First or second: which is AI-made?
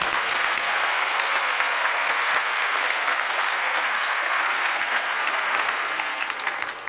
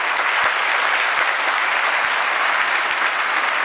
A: first